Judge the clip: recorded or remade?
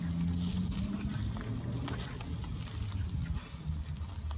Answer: recorded